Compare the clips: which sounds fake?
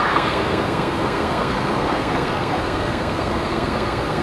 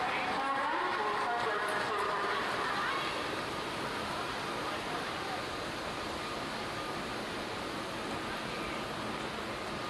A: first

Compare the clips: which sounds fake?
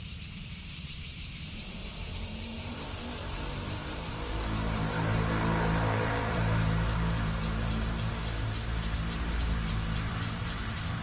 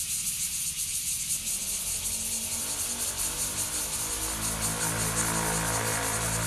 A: first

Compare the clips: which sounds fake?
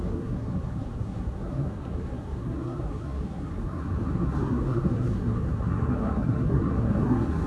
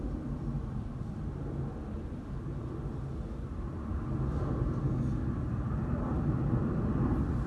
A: first